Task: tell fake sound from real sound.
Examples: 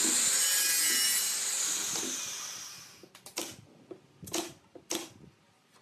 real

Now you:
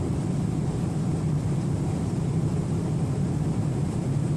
fake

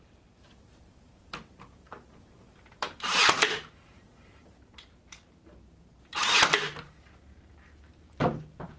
fake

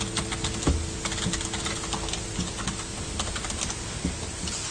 real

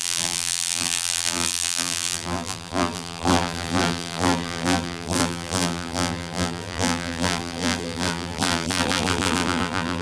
fake